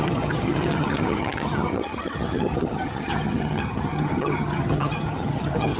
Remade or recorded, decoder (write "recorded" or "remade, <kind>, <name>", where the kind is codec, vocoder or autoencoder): remade, vocoder, HiFi-GAN